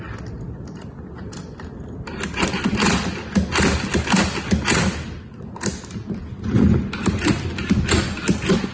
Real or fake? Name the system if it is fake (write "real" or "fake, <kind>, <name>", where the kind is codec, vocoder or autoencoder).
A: real